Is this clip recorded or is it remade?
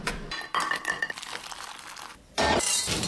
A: remade